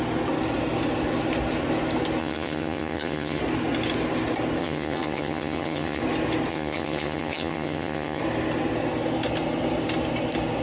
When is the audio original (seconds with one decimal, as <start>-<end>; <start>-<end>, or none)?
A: 0.0-2.2; 3.4-4.6; 6.0-6.5; 8.2-10.6